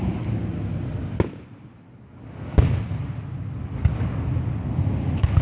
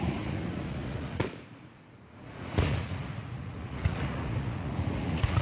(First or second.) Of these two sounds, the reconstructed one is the second